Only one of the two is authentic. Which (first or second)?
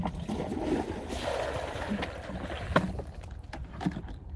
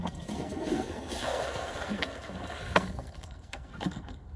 first